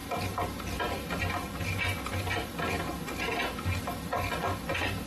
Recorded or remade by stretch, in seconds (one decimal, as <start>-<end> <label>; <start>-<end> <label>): 0.0-5.1 recorded